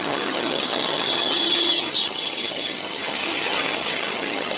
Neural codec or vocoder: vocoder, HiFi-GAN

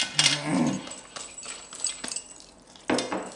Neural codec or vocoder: none